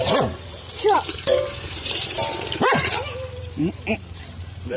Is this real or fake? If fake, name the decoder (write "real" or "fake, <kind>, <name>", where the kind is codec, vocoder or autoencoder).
fake, vocoder, BigVGAN v2